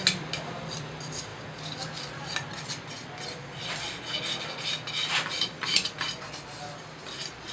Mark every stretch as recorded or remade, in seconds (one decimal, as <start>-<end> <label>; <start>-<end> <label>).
0.0-7.5 recorded